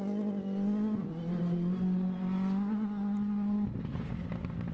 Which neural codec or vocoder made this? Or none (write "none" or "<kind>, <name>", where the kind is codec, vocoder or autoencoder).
none